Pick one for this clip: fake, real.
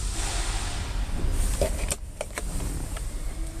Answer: real